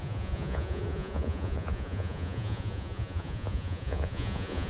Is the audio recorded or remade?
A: remade